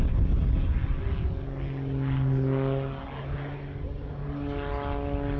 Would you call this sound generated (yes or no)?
no